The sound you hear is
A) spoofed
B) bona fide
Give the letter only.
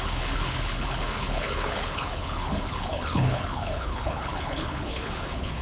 A